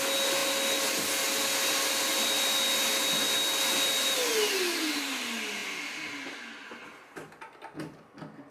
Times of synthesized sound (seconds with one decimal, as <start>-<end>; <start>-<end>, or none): none